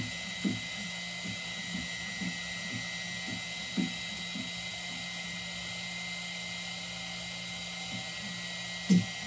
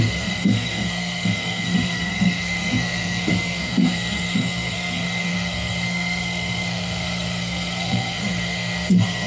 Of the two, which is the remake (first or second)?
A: second